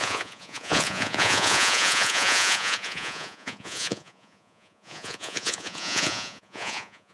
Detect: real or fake fake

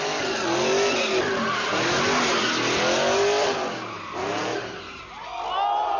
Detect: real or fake real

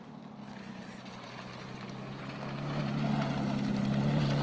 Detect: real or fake real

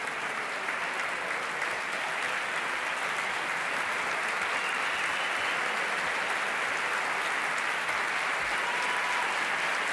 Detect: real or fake real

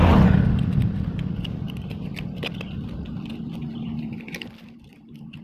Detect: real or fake real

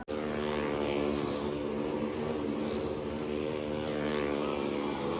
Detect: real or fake real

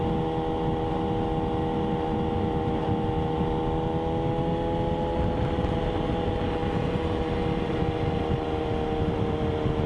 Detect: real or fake real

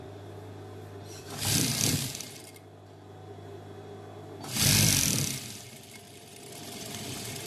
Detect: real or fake fake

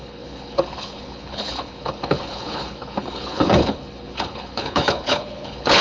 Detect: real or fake fake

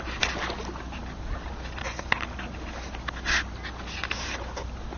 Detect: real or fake real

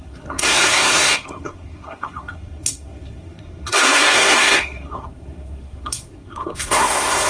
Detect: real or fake fake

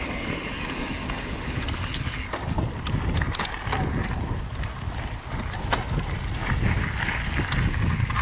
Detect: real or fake real